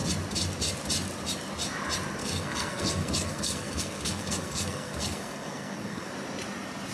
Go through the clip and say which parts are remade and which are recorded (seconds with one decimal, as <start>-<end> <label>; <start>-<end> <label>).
0.0-2.2 recorded; 2.2-6.1 remade; 6.1-6.9 recorded